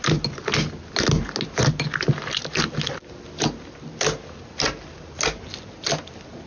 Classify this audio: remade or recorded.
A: recorded